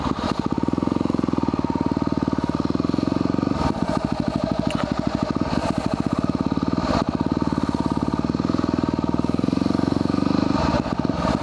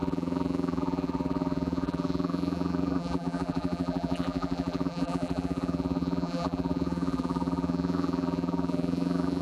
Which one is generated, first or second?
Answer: second